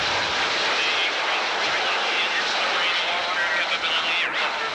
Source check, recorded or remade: recorded